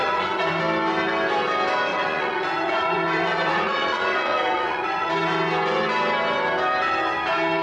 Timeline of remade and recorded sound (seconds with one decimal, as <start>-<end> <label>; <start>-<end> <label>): 0.0-0.6 remade; 0.6-1.9 recorded; 1.9-5.1 remade; 5.1-7.6 recorded